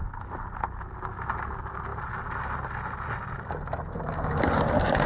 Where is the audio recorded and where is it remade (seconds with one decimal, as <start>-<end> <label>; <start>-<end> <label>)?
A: 0.0-5.1 recorded